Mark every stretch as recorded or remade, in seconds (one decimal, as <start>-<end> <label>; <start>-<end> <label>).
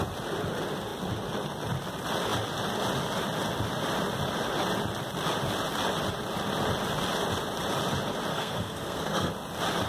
0.0-8.3 recorded; 8.3-9.3 remade; 9.3-9.9 recorded